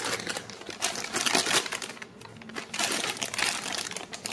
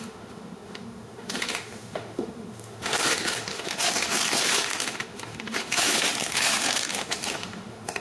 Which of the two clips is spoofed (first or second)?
second